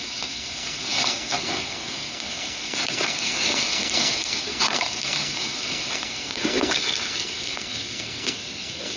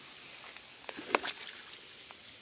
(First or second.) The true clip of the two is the second